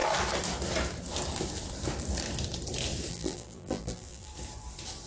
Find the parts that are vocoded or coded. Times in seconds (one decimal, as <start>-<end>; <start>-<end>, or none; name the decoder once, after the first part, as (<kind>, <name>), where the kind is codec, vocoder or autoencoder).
3.1-4.3 (vocoder, BigVGAN v2)